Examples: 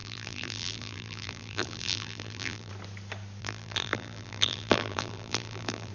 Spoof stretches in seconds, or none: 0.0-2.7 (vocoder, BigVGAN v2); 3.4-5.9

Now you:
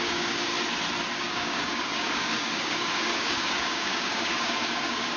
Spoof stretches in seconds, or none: 0.0-0.5 (codec, DAC); 1.2-5.2